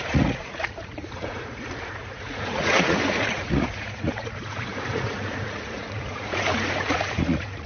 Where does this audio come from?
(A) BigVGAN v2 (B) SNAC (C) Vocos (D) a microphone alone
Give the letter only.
C